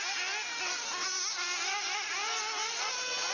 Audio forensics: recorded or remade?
recorded